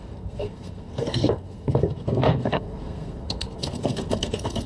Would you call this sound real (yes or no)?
no